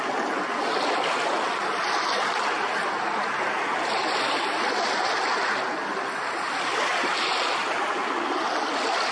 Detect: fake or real real